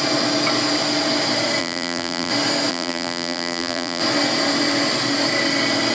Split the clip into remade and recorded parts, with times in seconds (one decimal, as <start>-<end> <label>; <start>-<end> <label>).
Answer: 0.0-1.6 recorded; 1.6-2.3 remade; 2.3-2.7 recorded; 2.7-4.0 remade; 4.0-5.9 recorded